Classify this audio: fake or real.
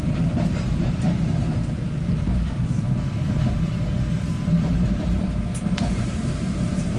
fake